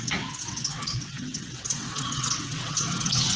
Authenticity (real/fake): fake